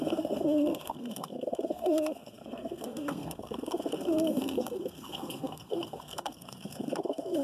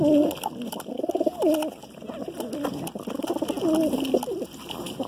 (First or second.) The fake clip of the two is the first